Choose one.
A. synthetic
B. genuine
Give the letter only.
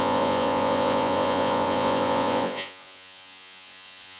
A